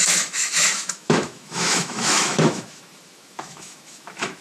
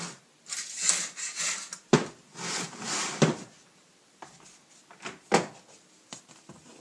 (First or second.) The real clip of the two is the second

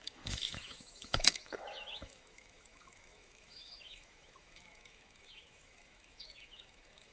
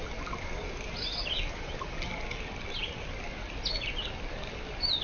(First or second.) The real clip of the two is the second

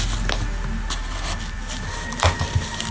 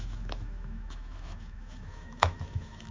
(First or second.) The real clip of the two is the first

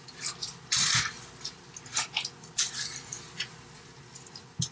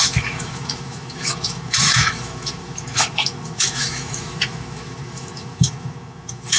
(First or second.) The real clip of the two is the first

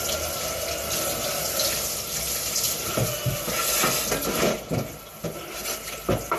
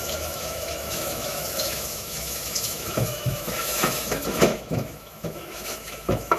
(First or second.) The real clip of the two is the first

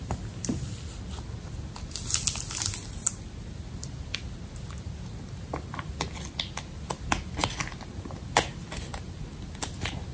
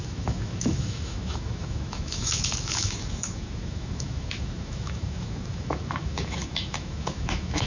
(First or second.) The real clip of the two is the first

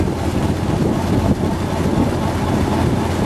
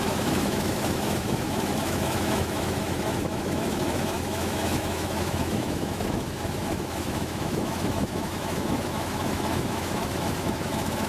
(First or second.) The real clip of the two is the first